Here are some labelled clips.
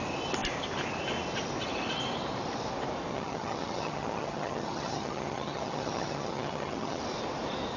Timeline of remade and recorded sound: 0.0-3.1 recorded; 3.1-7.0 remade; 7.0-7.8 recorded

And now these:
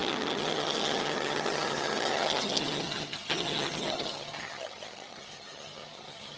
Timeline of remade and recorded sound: 0.0-6.4 remade

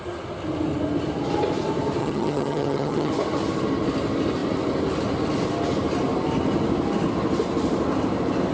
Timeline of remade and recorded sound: 0.0-2.0 recorded; 2.0-3.1 remade; 3.1-8.5 recorded

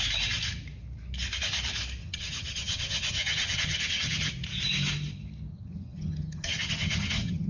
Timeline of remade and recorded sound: 0.0-2.0 recorded; 2.0-4.3 remade; 4.3-5.5 recorded; 5.5-7.5 remade